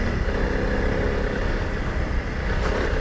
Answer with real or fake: real